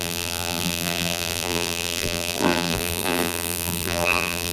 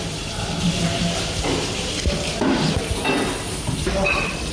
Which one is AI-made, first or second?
first